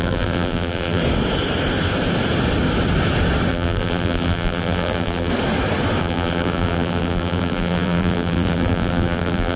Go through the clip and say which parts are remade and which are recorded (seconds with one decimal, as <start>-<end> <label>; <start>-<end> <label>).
0.0-1.0 remade; 1.0-3.5 recorded; 3.5-5.3 remade; 5.3-6.0 recorded; 6.0-9.6 remade

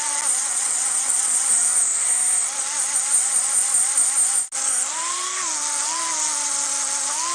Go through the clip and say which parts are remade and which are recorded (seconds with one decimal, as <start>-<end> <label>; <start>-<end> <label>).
0.0-0.4 recorded; 0.4-1.5 remade; 1.5-7.3 recorded

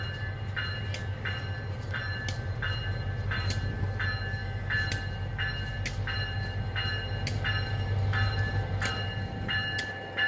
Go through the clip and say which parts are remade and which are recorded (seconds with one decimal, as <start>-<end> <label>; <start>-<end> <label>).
0.0-10.3 recorded

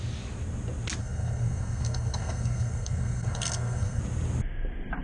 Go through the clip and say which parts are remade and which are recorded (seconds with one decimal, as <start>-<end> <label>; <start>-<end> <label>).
0.0-1.0 recorded; 1.0-4.0 remade; 4.0-5.0 recorded

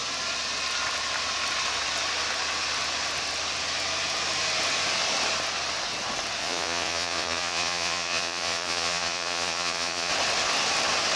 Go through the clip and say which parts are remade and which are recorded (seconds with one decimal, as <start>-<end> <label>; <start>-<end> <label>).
0.0-6.4 recorded; 6.4-10.1 remade; 10.1-11.2 recorded

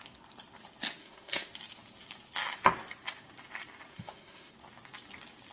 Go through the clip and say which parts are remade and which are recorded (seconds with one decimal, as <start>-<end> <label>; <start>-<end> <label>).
0.0-1.0 recorded; 1.0-1.5 remade; 1.5-3.9 recorded; 3.9-4.5 remade; 4.5-5.5 recorded

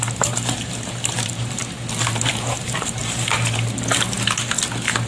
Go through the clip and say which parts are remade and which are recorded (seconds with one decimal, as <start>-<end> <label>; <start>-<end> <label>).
0.0-1.6 remade; 1.6-2.3 recorded; 2.3-3.0 remade; 3.0-5.1 recorded

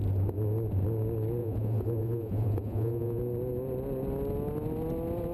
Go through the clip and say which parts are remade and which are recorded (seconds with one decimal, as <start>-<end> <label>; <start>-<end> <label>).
0.0-1.4 recorded; 1.4-3.2 remade; 3.2-5.3 recorded